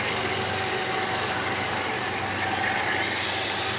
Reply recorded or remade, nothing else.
recorded